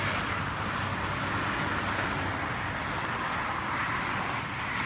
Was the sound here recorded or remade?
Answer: recorded